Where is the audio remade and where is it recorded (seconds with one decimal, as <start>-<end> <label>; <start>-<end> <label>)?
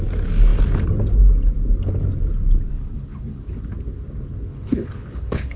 0.0-2.7 recorded; 2.7-3.6 remade; 3.6-4.5 recorded; 4.5-5.6 remade